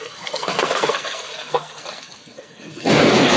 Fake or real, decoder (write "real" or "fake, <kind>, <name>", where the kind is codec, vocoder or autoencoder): fake, codec, SNAC